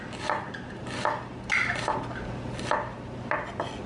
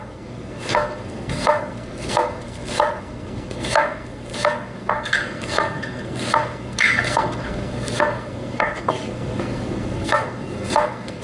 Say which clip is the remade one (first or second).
second